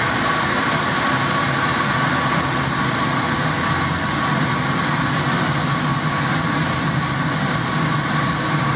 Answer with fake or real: real